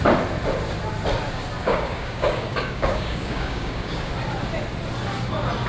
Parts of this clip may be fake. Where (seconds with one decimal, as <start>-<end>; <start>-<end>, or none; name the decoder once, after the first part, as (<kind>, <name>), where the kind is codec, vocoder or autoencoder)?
1.6-4.1 (codec, DAC)